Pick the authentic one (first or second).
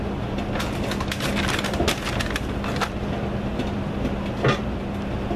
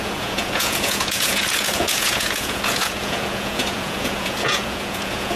first